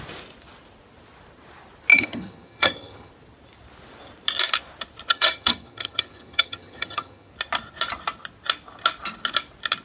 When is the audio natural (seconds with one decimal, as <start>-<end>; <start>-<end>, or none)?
0.0-1.9; 3.1-5.1; 7.3-9.8